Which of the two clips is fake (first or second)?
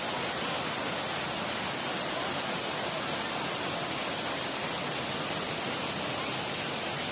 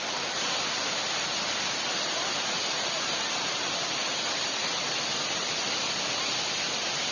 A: second